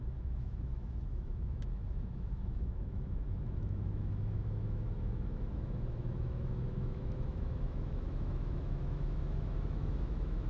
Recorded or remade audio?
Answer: remade